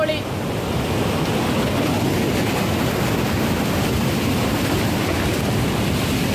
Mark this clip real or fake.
real